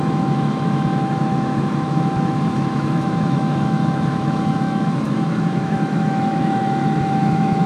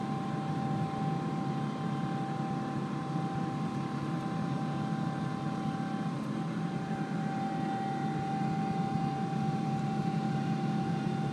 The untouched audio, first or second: second